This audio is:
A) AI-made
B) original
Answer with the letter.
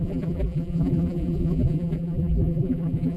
A